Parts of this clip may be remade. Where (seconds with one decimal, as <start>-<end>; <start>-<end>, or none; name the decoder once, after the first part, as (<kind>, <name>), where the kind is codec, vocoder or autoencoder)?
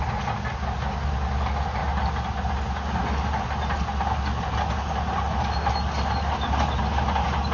none